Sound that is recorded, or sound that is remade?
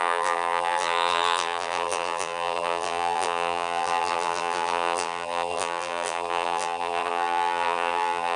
remade